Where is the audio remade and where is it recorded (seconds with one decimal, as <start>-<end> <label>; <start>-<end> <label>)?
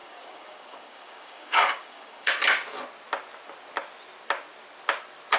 0.0-2.3 remade; 2.3-5.4 recorded